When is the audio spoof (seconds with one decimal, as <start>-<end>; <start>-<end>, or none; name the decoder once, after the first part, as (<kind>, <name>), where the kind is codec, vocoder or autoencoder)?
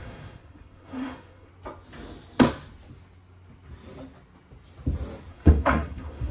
0.0-1.5 (codec, SNAC); 5.3-6.3